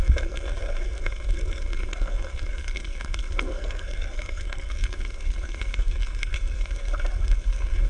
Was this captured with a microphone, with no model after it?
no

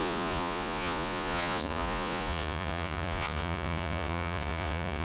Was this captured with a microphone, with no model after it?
no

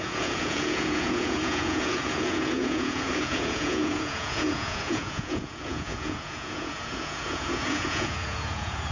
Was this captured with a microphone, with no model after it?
no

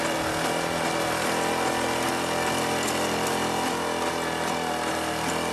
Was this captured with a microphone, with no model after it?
yes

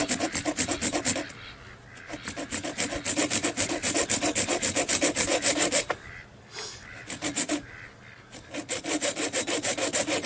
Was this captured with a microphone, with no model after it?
yes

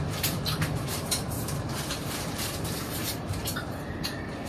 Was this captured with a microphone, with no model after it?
no